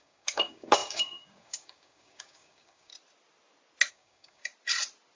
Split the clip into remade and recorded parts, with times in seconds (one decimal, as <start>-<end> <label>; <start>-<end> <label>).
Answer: 0.0-2.9 remade; 2.9-3.9 recorded; 3.9-4.4 remade; 4.4-5.2 recorded